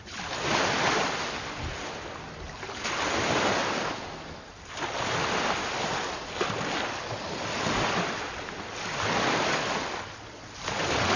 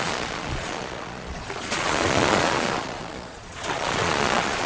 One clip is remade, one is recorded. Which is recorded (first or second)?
first